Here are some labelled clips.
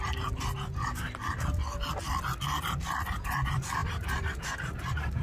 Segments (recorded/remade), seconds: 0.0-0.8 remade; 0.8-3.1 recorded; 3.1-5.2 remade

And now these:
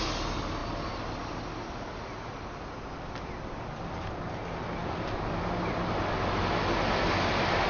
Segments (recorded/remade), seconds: 0.0-7.7 recorded

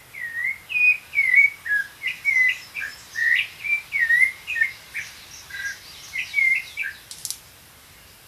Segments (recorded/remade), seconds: 0.0-8.3 recorded

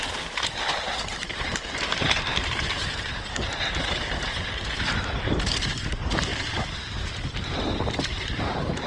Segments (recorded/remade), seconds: 0.0-6.3 remade; 6.3-8.0 recorded; 8.0-8.9 remade

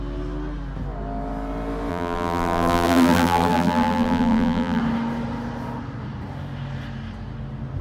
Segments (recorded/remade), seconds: 0.0-1.9 recorded; 1.9-4.8 remade; 4.8-7.8 recorded

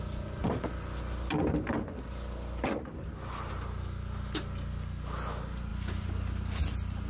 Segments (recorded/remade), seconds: 0.0-7.1 recorded

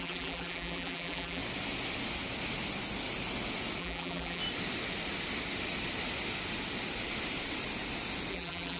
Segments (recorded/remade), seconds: 0.0-1.4 remade; 1.4-3.8 recorded; 3.8-4.4 remade; 4.4-8.3 recorded; 8.3-8.8 remade